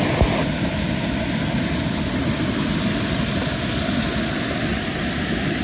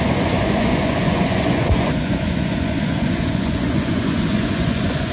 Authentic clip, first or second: first